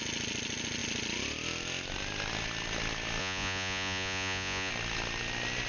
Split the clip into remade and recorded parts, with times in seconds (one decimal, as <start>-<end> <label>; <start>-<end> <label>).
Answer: 0.0-3.2 recorded; 3.2-4.7 remade; 4.7-5.7 recorded